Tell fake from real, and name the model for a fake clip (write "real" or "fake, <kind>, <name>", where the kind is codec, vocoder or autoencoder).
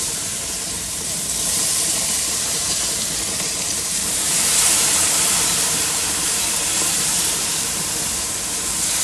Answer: fake, vocoder, BigVGAN v2